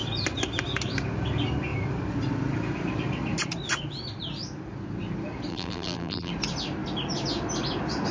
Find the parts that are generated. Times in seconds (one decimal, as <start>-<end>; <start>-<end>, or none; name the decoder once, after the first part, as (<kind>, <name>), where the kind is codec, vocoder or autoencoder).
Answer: 5.5-6.3 (vocoder, BigVGAN v2)